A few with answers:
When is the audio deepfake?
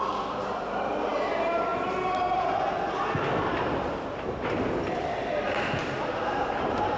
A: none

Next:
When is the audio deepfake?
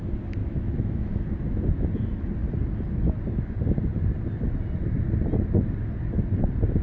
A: 0.4-1.2 (autoencoder, DAC-VAE)